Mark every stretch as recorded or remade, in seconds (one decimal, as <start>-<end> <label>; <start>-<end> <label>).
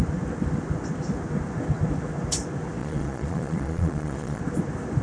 0.0-2.8 recorded; 2.8-4.4 remade; 4.4-5.0 recorded